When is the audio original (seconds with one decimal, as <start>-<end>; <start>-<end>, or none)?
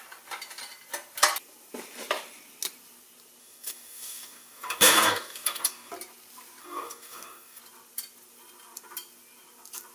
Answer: 0.0-3.4; 5.9-6.6; 7.6-9.9